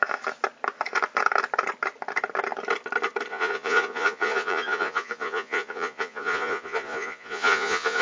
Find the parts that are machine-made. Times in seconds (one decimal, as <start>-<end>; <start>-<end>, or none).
3.3-8.0